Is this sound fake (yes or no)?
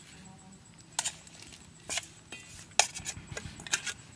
no